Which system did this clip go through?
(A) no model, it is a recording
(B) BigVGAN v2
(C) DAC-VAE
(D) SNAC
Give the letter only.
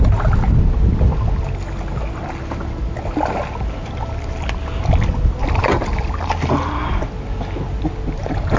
A